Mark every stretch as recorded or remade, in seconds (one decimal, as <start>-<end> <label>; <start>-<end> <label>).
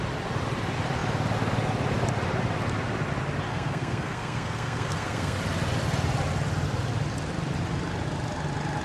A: 0.0-3.5 recorded; 3.5-5.4 remade; 5.4-8.8 recorded